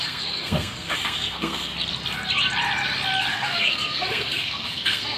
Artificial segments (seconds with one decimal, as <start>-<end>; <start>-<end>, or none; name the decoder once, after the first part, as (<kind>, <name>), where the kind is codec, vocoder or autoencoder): 0.0-1.7 (codec, SNAC); 3.3-5.2